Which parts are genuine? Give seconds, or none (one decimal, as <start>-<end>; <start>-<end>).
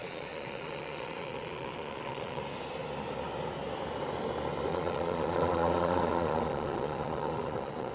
2.4-4.7